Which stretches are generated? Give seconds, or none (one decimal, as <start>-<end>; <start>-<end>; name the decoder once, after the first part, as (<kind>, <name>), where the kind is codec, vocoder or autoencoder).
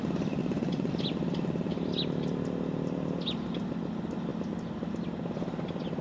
0.4-0.9 (vocoder, Vocos)